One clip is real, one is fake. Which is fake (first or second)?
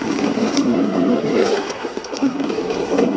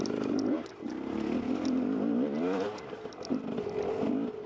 first